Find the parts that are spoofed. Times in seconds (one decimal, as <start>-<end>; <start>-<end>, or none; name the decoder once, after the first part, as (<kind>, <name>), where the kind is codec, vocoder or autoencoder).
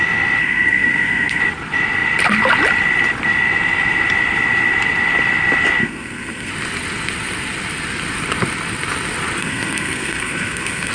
0.4-1.4 (codec, SNAC); 5.8-6.5; 9.4-10.9